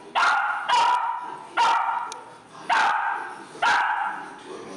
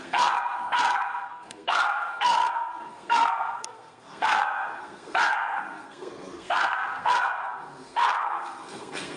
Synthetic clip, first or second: second